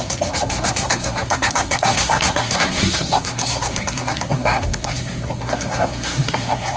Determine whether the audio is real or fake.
fake